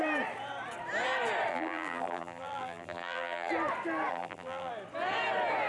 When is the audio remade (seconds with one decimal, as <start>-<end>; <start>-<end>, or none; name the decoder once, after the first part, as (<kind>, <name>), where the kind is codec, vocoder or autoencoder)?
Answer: 1.5-3.5 (vocoder, BigVGAN v2); 4.1-4.7